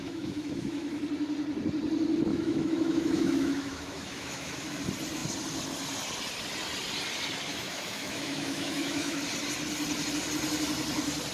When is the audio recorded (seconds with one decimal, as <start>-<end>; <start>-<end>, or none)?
1.0-2.3; 4.8-7.5; 9.2-11.3